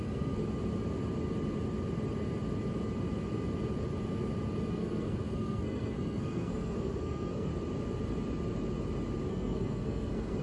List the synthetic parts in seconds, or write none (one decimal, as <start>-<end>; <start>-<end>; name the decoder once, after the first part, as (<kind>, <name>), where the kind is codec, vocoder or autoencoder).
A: 0.0-0.4 (codec, SNAC); 4.7-7.5; 9.3-10.4